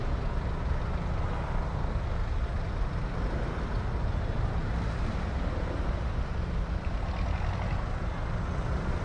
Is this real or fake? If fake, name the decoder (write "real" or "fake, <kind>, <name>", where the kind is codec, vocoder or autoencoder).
real